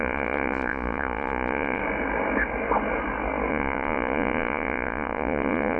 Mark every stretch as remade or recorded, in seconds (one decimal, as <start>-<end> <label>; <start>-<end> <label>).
0.0-1.8 remade; 1.8-3.5 recorded; 3.5-5.8 remade